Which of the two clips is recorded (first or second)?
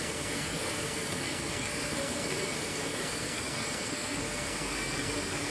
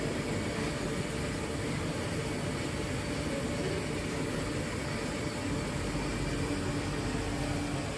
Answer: second